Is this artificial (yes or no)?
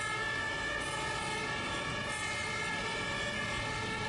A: no